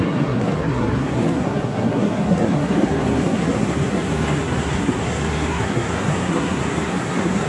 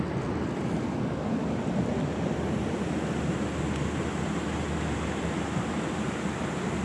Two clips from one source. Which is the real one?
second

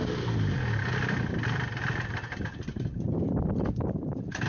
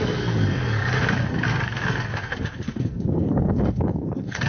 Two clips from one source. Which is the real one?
first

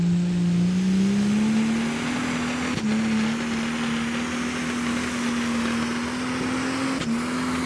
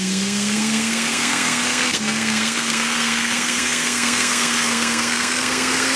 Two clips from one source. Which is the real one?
first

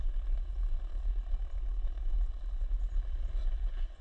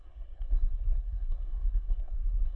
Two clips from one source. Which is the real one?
first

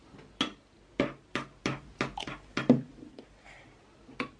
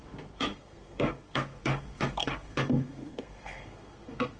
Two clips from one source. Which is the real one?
first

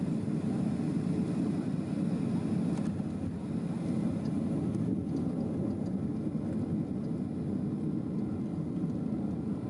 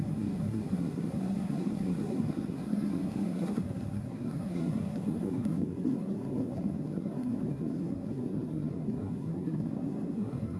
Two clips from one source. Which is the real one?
first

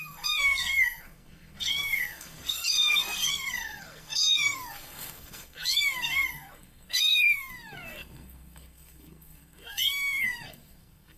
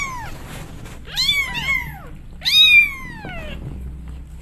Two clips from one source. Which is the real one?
second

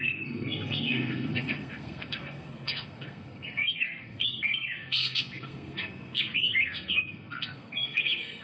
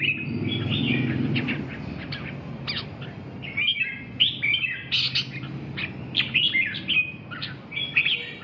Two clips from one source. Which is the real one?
second